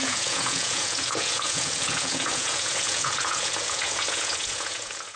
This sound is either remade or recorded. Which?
remade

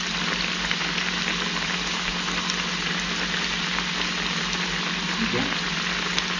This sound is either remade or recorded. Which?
recorded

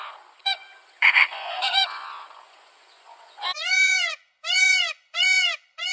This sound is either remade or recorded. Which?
remade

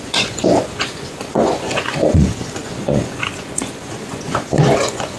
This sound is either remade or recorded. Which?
remade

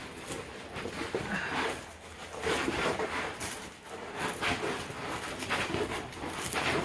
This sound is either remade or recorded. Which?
recorded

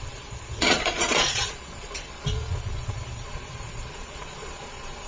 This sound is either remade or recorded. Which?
remade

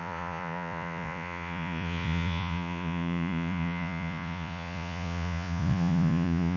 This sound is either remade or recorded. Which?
remade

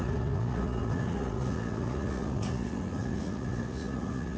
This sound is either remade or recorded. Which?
remade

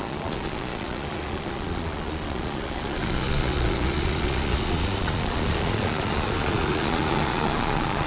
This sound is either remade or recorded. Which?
remade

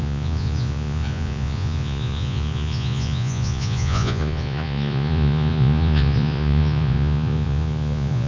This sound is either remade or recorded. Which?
remade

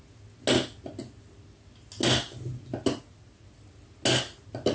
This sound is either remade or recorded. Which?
recorded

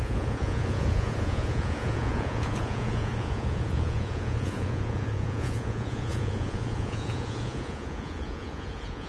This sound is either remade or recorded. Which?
remade